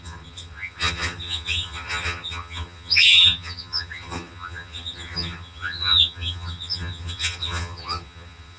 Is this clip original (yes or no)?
no